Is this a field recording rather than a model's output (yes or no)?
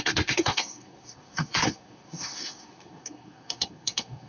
no